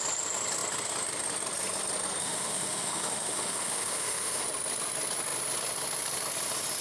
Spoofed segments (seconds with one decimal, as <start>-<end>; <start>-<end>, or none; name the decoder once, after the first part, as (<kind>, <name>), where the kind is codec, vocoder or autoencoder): 2.2-4.4 (autoencoder, DAC-VAE)